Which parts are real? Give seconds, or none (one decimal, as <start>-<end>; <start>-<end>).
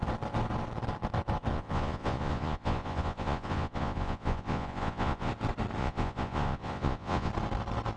0.0-1.5; 5.3-5.8; 7.3-8.0